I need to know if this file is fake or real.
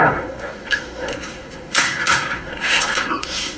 fake